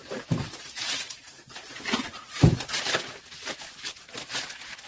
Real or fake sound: real